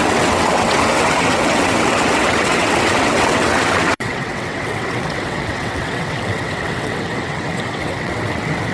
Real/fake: fake